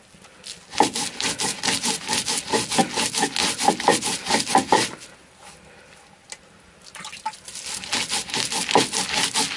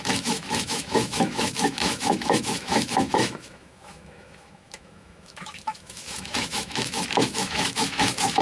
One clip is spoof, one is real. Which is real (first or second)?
first